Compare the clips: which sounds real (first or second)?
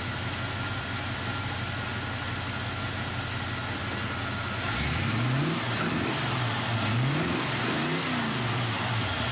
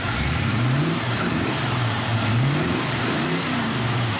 first